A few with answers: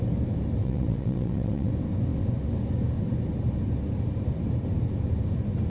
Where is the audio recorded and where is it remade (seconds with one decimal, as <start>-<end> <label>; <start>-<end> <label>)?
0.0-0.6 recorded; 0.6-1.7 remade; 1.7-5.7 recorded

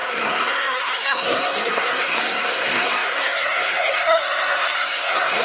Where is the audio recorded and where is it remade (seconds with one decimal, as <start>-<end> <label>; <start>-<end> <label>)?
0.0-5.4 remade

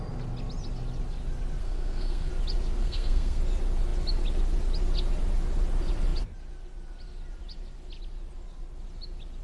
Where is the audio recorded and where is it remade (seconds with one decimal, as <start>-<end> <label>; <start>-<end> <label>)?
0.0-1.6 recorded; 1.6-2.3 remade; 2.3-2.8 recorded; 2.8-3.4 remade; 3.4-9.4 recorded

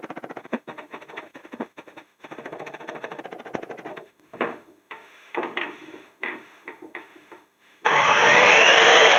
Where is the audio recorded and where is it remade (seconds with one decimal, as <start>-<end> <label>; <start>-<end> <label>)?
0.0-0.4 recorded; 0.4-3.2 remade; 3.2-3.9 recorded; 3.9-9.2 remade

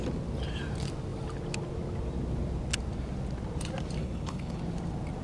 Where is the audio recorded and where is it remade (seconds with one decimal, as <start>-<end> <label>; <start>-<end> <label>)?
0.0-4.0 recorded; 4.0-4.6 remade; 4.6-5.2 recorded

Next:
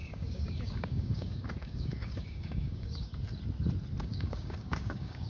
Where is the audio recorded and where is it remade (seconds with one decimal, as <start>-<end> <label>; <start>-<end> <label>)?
0.0-3.1 remade; 3.1-4.0 recorded; 4.0-5.3 remade

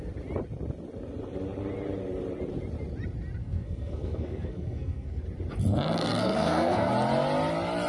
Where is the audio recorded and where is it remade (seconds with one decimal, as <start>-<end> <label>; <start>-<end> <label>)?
0.0-3.4 recorded; 3.4-5.2 remade; 5.2-6.0 recorded; 6.0-6.9 remade; 6.9-7.9 recorded

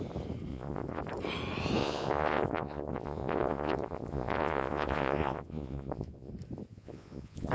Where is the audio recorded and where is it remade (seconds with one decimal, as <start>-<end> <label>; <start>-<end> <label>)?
0.0-0.5 recorded; 0.5-1.0 remade; 1.0-1.8 recorded; 1.8-6.3 remade; 6.3-6.7 recorded; 6.7-7.5 remade